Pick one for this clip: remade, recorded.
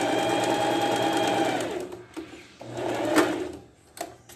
recorded